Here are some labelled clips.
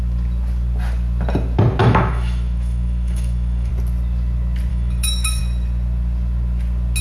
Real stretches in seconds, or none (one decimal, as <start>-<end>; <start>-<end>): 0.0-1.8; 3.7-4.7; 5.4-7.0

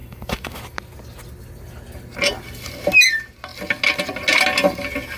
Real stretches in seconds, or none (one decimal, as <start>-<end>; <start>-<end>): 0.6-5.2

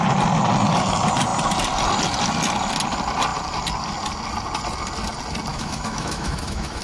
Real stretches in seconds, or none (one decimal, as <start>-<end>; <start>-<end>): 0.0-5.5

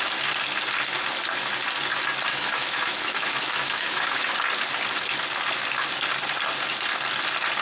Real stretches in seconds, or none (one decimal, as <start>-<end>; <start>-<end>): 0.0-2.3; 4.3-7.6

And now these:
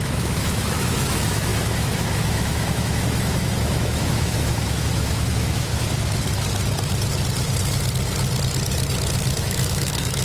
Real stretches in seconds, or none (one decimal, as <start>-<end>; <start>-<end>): 5.7-9.4

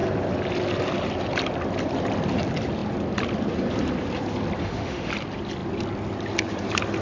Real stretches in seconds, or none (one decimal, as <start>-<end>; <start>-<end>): 0.0-4.6; 5.1-7.0

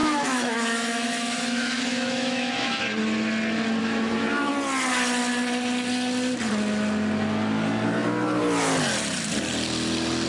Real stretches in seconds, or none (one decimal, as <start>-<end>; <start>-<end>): 2.8-3.8; 4.5-10.3